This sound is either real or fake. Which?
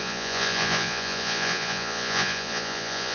fake